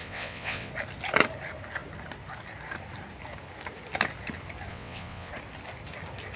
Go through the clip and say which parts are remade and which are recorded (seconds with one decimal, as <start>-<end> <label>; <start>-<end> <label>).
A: 0.0-0.7 remade; 0.7-4.7 recorded; 4.7-5.3 remade; 5.3-6.4 recorded